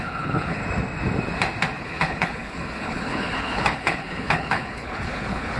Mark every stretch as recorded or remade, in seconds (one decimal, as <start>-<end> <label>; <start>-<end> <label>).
0.0-0.6 remade; 0.6-1.8 recorded; 1.8-5.6 remade